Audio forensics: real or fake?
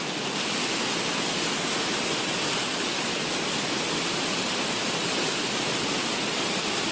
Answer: real